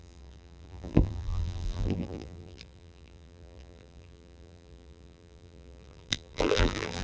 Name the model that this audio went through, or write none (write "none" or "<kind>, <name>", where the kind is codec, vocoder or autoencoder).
vocoder, BigVGAN v2